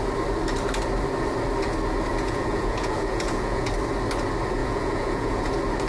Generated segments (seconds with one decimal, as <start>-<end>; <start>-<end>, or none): 2.1-3.7; 4.6-5.5